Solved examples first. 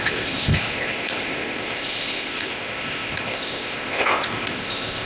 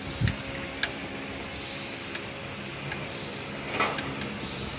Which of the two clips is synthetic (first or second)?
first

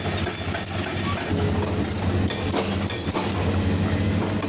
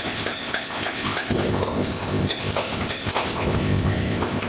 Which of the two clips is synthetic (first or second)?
second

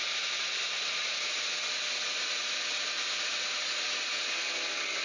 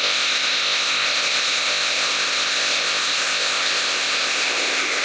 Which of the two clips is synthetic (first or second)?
second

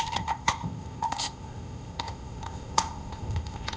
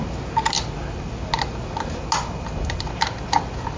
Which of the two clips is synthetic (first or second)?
first